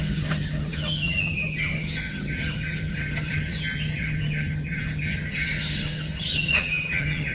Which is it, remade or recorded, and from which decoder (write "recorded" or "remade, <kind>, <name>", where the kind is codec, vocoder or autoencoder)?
remade, vocoder, HiFi-GAN